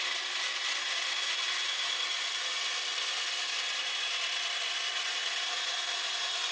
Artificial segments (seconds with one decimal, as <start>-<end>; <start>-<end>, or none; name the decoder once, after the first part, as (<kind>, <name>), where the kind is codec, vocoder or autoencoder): 2.1-4.9 (vocoder, BigVGAN v2)